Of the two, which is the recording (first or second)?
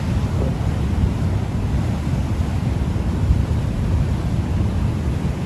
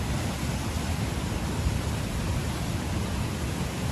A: second